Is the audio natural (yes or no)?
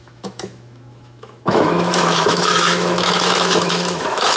no